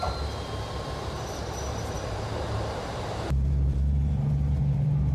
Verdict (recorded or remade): remade